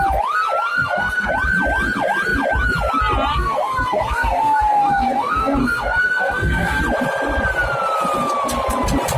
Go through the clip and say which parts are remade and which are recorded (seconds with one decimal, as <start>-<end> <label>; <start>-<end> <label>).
0.0-0.7 recorded; 0.7-1.3 remade; 1.3-3.3 recorded; 3.3-6.8 remade; 6.8-9.2 recorded